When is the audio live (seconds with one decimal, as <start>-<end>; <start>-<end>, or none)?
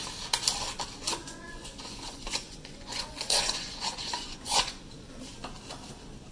0.0-1.0; 4.8-6.3